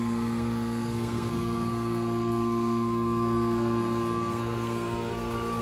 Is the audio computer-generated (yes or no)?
yes